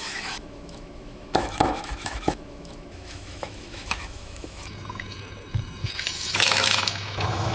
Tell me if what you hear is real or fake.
fake